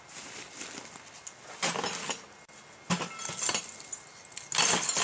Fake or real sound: real